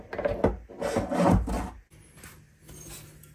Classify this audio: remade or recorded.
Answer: recorded